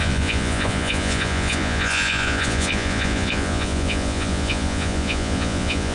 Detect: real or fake fake